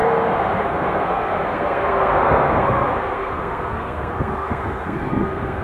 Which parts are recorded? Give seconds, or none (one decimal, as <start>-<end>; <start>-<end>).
none